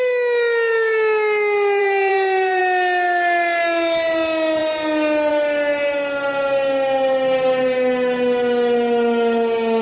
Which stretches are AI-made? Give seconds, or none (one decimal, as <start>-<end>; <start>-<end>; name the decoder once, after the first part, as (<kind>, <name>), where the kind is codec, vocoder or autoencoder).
1.8-2.6 (vocoder, BigVGAN v2)